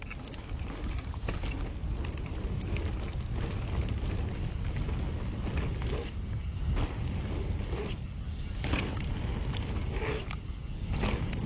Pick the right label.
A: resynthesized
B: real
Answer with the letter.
B